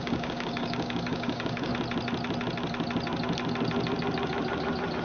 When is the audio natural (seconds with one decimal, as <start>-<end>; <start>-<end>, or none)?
1.7-5.0